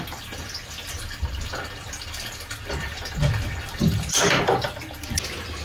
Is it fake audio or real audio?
real